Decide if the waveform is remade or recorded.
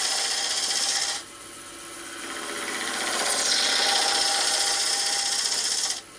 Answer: recorded